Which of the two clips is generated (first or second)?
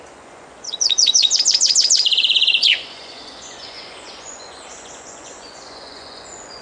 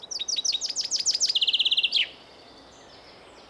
first